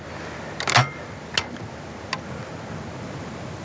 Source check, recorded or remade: recorded